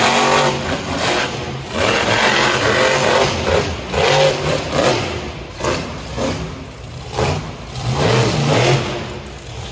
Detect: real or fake real